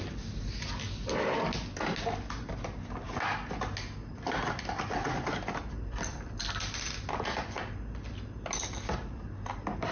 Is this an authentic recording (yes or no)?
yes